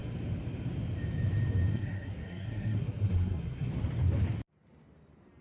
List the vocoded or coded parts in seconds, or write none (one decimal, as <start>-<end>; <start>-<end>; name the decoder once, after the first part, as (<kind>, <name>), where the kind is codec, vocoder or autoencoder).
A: 1.7-3.7 (codec, SNAC)